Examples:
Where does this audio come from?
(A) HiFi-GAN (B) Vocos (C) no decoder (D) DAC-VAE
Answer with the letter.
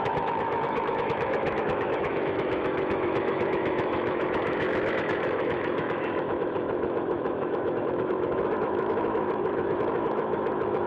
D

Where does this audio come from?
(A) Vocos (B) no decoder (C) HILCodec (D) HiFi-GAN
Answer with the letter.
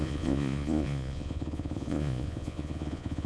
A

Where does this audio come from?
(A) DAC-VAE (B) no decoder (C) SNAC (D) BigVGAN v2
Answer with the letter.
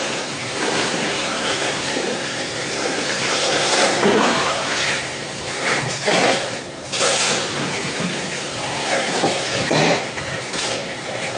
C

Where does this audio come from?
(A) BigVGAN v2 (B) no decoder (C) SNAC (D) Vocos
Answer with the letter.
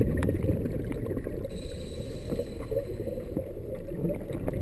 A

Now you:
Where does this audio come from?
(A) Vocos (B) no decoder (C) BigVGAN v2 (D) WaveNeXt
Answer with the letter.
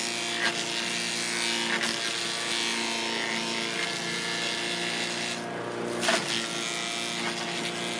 B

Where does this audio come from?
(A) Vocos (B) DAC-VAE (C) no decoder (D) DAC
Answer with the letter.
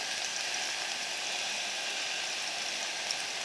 C